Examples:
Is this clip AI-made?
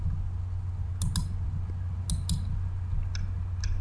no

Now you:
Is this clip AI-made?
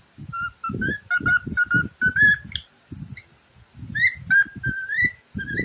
no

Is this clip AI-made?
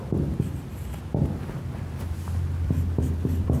yes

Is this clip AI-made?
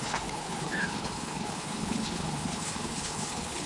yes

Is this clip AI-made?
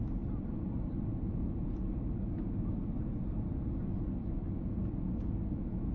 no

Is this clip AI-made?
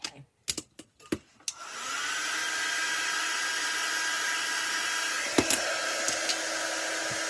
no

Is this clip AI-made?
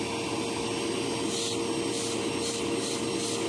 no